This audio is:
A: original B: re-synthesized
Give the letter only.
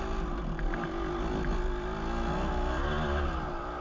A